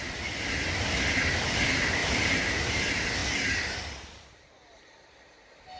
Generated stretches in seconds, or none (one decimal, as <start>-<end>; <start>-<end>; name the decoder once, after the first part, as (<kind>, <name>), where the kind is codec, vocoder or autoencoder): 2.0-2.8 (vocoder, BigVGAN v2); 3.2-4.8